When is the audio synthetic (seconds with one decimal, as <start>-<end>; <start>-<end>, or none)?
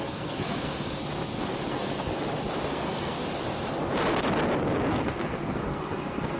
0.0-1.0; 1.7-2.1; 2.7-3.2; 4.9-6.4